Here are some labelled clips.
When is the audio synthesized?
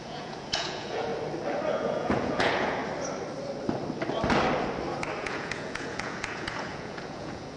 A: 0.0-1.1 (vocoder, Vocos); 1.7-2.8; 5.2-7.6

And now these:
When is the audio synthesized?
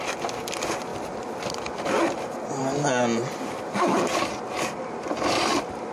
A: none